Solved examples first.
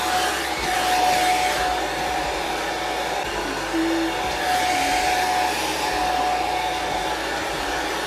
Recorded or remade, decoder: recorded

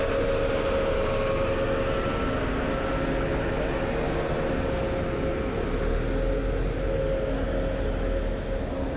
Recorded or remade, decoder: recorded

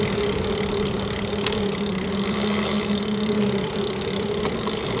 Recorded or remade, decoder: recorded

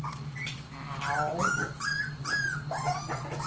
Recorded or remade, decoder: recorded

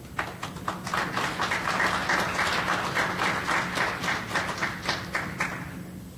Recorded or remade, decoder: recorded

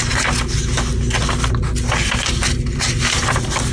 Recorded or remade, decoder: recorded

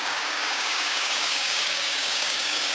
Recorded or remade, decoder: remade, codec, DAC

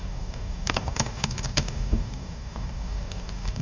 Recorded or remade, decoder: remade, codec, DAC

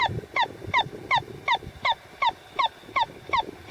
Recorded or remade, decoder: recorded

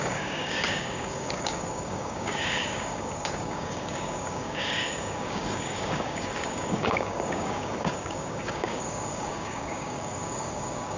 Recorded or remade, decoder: remade, codec, DAC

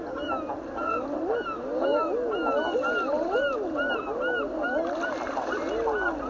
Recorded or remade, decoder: recorded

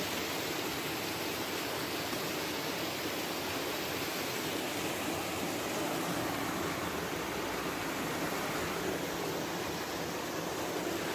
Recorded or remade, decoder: recorded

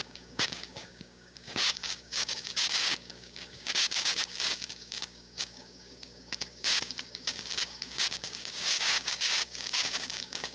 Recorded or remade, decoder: remade, codec, DAC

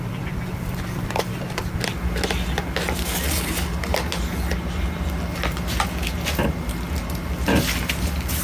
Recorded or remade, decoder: recorded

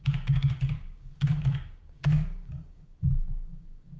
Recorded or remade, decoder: remade, codec, DAC